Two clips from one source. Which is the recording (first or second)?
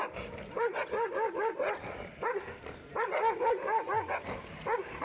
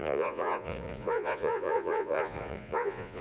first